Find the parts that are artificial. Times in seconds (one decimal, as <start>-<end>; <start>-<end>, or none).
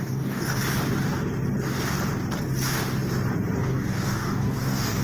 0.0-0.6; 3.6-5.0